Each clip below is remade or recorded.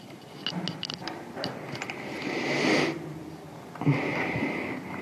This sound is recorded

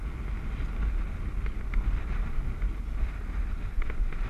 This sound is recorded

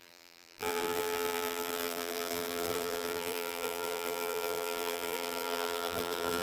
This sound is remade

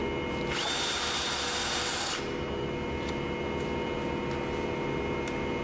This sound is recorded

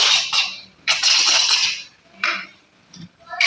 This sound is remade